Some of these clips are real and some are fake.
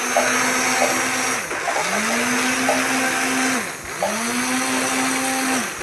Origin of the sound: real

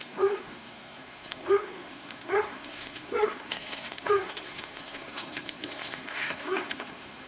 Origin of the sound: fake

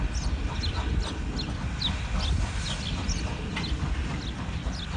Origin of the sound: real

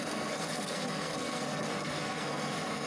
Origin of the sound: fake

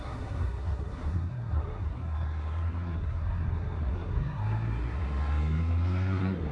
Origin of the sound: fake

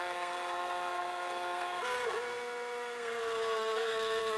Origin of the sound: fake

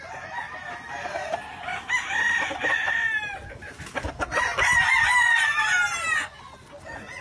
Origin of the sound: real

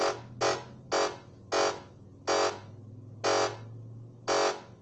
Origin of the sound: real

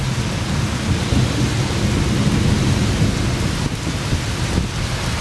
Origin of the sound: real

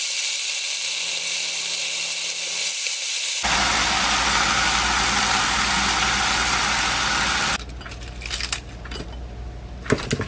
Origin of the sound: real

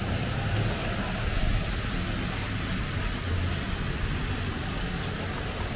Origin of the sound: real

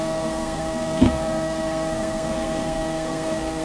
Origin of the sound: fake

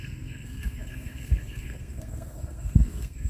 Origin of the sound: fake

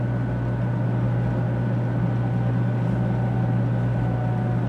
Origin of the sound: real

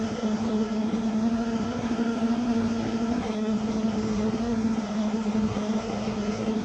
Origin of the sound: fake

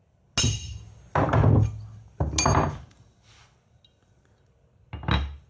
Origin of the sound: real